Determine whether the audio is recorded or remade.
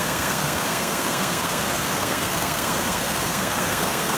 remade